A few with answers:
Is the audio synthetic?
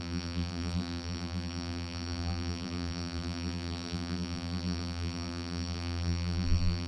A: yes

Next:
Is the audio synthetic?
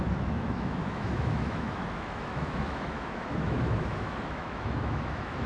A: yes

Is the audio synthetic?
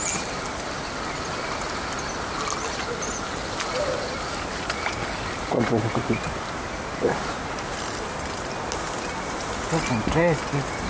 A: no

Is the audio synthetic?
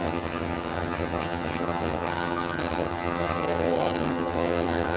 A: yes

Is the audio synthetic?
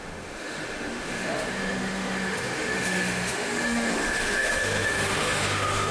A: yes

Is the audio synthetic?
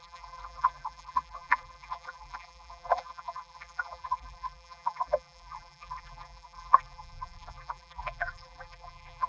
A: yes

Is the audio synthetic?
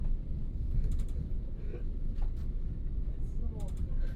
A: no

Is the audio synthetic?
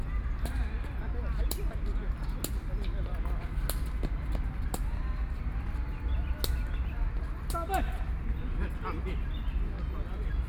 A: no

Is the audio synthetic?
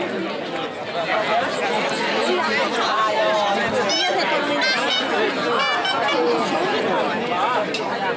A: no